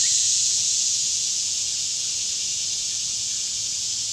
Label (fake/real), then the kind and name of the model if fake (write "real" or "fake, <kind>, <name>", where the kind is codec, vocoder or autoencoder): fake, vocoder, Vocos